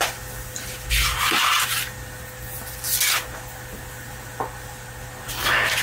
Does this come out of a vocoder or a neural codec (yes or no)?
no